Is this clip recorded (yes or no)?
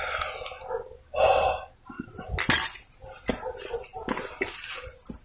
yes